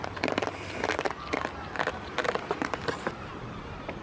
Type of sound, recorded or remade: recorded